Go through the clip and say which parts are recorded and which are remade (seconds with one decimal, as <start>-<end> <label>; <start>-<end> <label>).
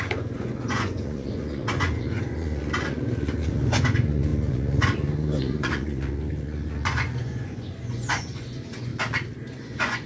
0.0-8.9 remade; 8.9-9.5 recorded; 9.5-10.1 remade